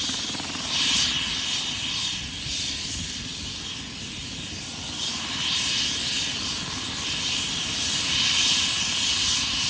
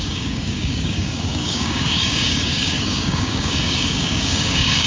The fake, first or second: second